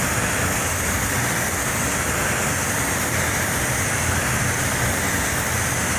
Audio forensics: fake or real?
real